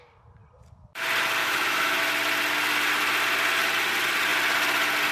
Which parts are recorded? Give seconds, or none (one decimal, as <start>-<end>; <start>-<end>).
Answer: 0.0-1.4; 2.0-5.1